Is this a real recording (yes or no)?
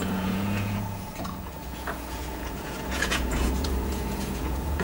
no